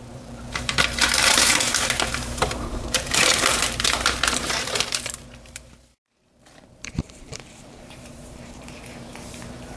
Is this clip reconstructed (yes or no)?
yes